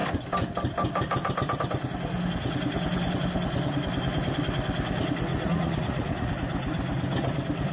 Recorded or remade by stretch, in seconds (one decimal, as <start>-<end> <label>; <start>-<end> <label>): 0.0-5.3 recorded; 5.3-6.3 remade; 6.3-7.7 recorded